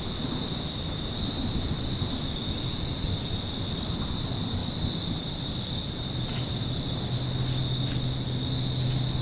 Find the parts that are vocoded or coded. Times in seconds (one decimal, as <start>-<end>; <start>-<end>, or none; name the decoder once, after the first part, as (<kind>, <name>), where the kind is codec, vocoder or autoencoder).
4.6-7.1 (vocoder, BigVGAN v2)